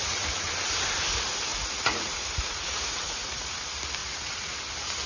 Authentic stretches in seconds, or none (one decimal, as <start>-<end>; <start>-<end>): 0.5-1.5; 3.6-4.0; 4.6-5.1

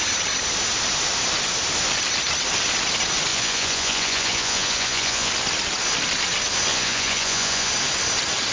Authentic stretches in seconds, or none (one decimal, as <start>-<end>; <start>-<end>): 0.0-3.3; 5.3-6.7; 7.7-8.5

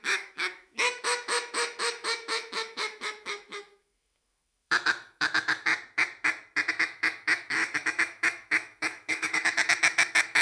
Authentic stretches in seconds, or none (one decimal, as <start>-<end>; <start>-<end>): 5.7-6.7

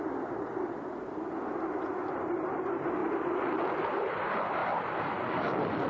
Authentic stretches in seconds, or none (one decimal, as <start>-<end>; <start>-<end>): 0.0-5.9

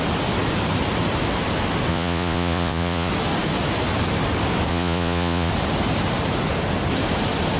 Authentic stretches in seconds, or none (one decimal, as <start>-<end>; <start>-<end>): 0.0-1.9; 3.1-4.7; 5.5-7.6

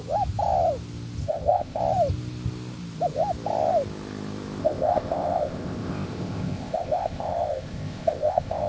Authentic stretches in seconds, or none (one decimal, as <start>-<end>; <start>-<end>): 0.0-1.2; 1.8-4.6